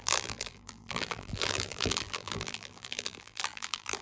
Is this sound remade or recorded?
remade